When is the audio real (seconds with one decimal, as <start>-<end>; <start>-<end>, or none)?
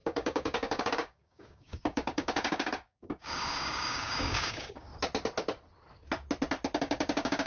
4.9-6.8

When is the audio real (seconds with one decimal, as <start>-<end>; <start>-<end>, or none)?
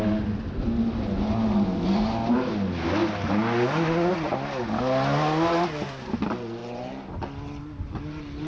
0.0-8.5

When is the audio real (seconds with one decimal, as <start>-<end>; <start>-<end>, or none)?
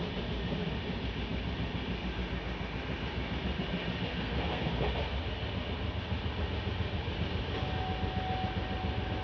0.0-4.1; 4.7-9.2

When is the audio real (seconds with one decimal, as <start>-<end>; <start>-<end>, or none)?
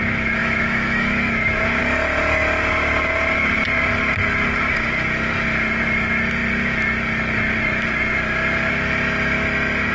0.0-0.4; 1.8-9.9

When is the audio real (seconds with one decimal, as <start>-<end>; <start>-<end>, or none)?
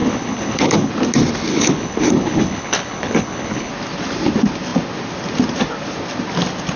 0.9-1.5; 3.7-6.8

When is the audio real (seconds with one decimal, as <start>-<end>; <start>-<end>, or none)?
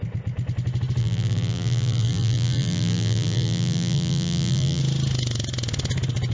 0.0-1.0; 4.8-6.3